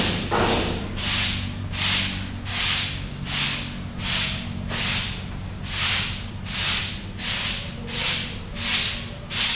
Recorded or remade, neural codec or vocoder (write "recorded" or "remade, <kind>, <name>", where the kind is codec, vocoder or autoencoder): recorded